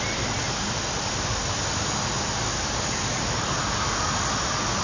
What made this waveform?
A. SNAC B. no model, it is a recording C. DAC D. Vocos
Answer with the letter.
B